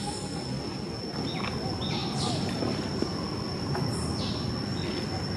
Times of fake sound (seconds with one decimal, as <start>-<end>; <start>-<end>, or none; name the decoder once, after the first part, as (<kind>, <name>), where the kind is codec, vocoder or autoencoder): none